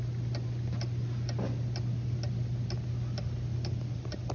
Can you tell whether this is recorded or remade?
recorded